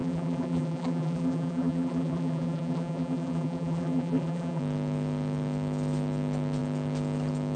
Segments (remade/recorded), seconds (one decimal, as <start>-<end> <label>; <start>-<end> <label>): 0.0-4.6 remade; 4.6-7.6 recorded

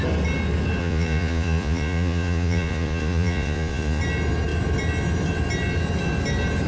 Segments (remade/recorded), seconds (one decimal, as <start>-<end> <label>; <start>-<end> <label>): 0.0-0.8 recorded; 0.8-4.0 remade; 4.0-6.7 recorded